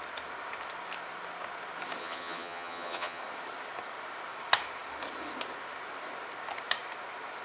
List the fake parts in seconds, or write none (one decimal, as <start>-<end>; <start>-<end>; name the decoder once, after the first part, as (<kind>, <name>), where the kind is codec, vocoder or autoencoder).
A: 2.0-3.2 (vocoder, HiFi-GAN)